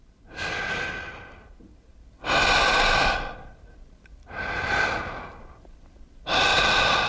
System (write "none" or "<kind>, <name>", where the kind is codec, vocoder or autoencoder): none